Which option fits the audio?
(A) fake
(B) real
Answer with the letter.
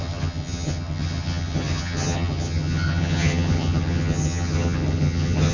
A